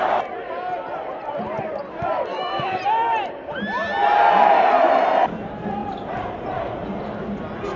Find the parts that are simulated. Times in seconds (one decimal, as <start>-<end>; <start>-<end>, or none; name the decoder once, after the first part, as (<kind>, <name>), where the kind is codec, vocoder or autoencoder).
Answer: 2.3-2.8 (codec, DAC)